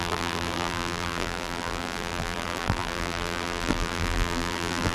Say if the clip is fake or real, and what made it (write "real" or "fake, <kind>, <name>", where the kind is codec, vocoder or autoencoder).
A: fake, vocoder, BigVGAN v2